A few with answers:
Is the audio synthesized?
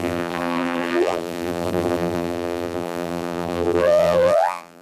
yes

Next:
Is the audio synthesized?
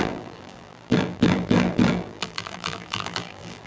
yes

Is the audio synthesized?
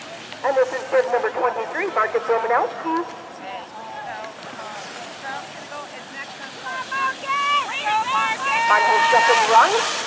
no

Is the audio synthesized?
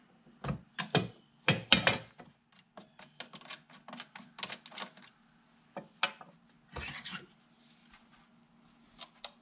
no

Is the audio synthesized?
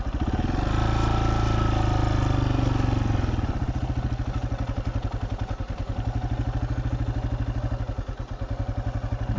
no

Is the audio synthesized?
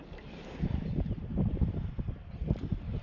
no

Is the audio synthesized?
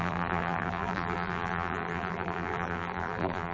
yes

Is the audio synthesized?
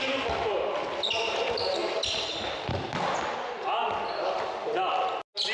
no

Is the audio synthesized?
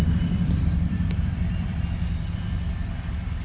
yes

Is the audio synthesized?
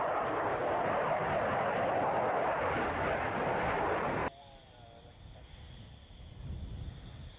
no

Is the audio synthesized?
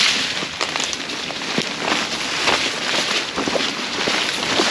no